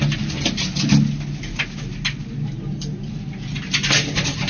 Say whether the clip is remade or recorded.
recorded